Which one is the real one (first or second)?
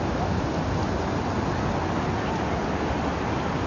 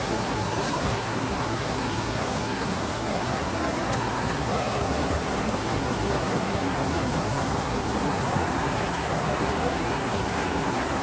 first